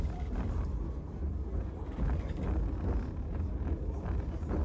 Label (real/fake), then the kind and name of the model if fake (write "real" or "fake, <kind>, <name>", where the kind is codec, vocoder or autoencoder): real